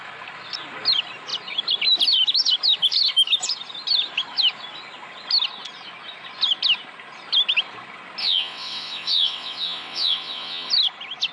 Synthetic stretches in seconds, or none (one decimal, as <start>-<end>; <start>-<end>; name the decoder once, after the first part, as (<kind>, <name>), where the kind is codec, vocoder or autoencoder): 8.2-10.7 (vocoder, WaveNeXt)